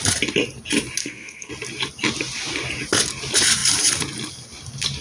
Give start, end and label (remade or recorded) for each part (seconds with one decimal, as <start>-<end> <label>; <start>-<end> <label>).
0.0-1.0 recorded; 1.0-1.5 remade; 1.5-5.0 recorded